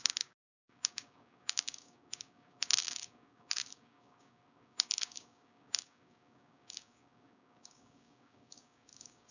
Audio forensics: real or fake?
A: fake